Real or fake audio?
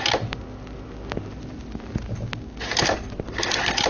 real